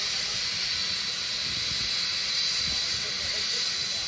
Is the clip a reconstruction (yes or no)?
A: no